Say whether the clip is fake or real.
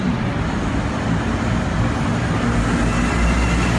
real